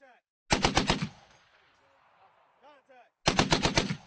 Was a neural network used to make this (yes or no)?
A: no